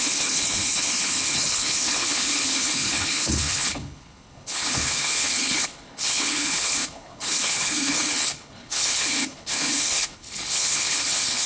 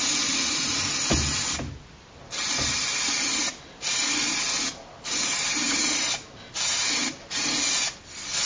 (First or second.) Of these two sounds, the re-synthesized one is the first